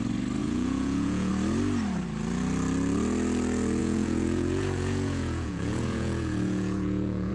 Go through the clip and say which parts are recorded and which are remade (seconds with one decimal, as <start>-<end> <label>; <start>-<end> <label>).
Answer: 0.0-0.4 recorded; 0.4-1.3 remade; 1.3-3.8 recorded; 3.8-7.3 remade